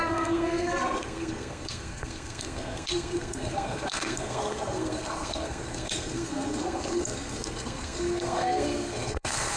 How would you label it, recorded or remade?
remade